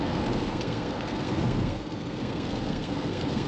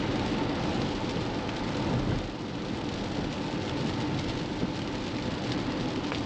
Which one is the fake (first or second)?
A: first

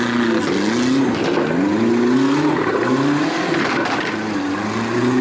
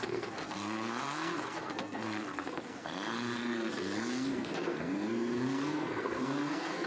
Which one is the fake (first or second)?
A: second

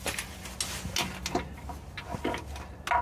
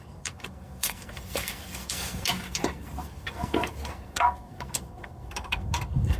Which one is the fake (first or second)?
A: second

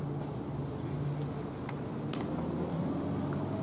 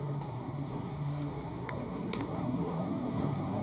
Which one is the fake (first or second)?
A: second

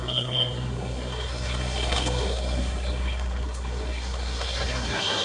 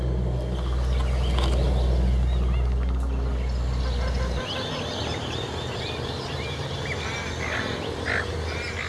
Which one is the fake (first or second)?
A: first